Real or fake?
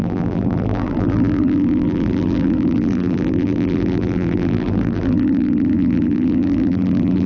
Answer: fake